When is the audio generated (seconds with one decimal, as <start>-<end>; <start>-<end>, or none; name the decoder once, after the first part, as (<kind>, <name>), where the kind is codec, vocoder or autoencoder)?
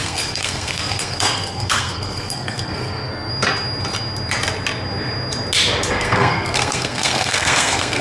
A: 0.0-3.3 (codec, SNAC); 5.9-8.0